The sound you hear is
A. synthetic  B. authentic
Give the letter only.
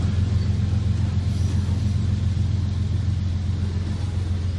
B